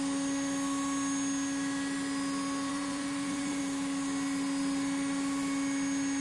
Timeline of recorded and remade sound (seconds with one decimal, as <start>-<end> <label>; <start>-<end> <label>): 0.0-2.7 recorded; 2.7-3.6 remade; 3.6-6.2 recorded

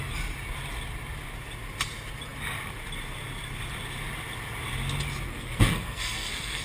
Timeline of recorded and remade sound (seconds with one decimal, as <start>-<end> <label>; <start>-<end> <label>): 0.0-5.3 recorded; 5.3-6.6 remade